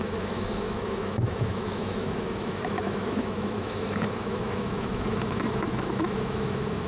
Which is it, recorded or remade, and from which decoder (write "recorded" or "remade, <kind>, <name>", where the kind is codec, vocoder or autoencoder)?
remade, autoencoder, DAC-VAE